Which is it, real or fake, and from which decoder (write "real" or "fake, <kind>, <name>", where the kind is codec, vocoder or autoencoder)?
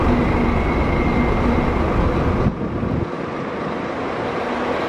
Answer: real